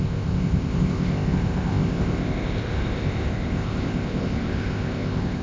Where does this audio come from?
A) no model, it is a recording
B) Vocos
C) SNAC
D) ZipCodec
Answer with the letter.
D